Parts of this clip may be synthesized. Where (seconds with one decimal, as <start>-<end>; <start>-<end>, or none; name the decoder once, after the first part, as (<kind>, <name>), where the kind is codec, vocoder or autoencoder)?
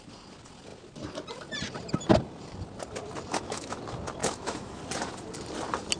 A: 3.3-3.8 (autoencoder, DAC-VAE); 4.2-4.8